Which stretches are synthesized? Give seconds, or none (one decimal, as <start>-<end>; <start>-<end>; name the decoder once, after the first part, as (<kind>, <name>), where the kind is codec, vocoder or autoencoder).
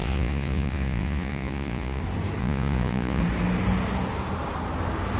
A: 0.0-2.0 (vocoder, Vocos); 2.4-3.2